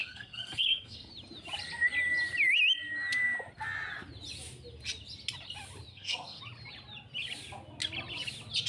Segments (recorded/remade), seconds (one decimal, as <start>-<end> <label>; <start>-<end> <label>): 0.0-1.1 remade; 1.1-5.9 recorded; 5.9-6.4 remade; 6.4-8.7 recorded